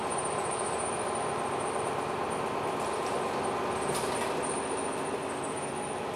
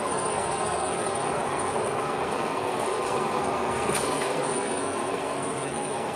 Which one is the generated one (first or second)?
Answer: second